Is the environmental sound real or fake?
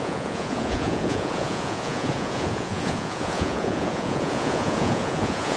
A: fake